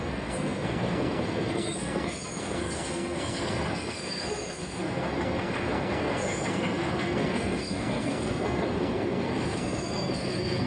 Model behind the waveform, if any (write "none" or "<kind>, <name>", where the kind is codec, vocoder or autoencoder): codec, SNAC